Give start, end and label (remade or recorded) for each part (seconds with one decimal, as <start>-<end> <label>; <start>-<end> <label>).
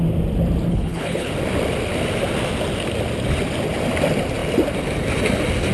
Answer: 0.0-0.7 recorded; 0.7-1.3 remade; 1.3-5.7 recorded